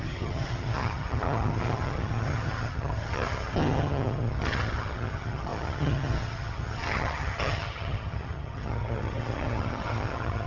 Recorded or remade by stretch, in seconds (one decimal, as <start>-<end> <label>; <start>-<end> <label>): 0.0-10.5 remade